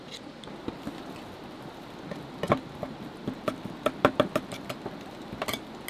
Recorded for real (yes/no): yes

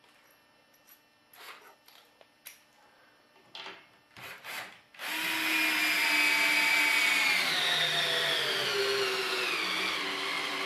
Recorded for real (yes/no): yes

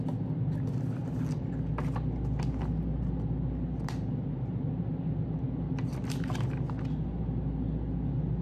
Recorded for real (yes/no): yes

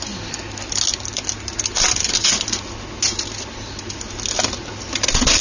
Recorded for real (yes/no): yes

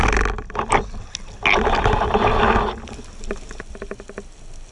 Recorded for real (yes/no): yes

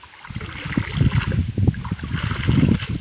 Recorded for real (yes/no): yes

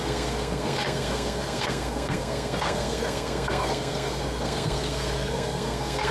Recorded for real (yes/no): no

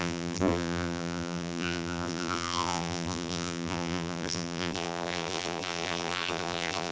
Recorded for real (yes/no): no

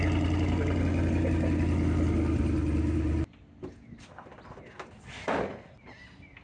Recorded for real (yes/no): yes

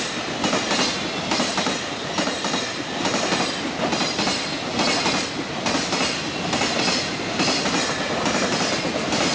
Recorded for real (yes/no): yes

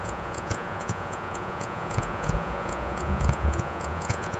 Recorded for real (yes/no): no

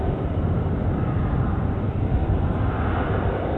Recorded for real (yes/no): yes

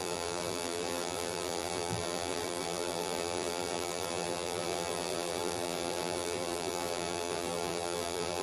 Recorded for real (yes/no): no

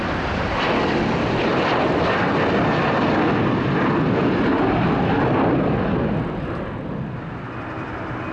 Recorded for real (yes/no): yes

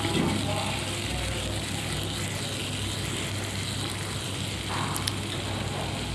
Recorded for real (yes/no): yes